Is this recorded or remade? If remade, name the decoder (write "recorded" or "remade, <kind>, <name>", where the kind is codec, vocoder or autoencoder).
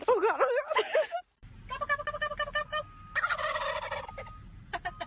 recorded